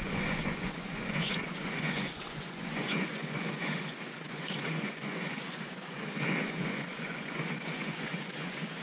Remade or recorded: remade